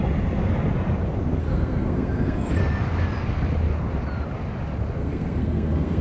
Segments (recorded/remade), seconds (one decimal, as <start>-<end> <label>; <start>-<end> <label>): 0.0-1.4 recorded; 1.4-2.5 remade; 2.5-5.0 recorded; 5.0-6.0 remade